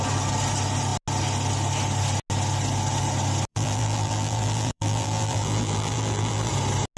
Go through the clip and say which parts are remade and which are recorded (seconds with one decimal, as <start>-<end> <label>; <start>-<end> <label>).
0.0-3.5 recorded; 3.5-6.5 remade; 6.5-7.0 recorded